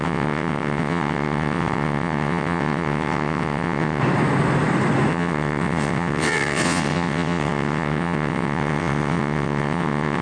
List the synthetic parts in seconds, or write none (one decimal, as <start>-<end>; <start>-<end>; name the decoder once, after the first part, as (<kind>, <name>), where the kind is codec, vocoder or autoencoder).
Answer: 0.0-4.0 (vocoder, WaveNeXt); 5.1-10.2